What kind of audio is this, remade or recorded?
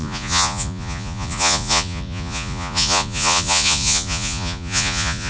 remade